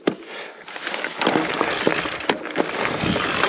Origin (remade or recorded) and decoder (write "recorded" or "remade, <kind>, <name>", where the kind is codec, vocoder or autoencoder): recorded